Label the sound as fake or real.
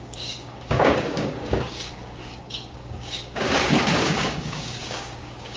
fake